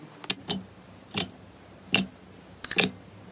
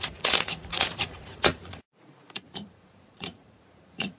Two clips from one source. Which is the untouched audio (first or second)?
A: first